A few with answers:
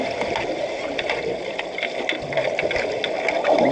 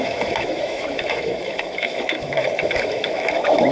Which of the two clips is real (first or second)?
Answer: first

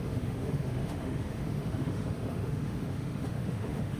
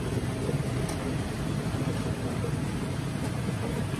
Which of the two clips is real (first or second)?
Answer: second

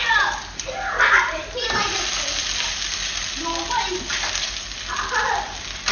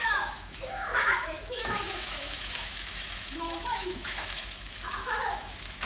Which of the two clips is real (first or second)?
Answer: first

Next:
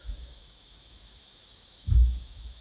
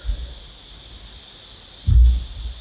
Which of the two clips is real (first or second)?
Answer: second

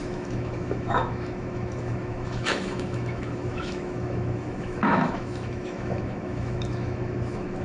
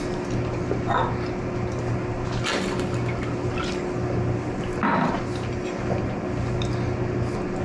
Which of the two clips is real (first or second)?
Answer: second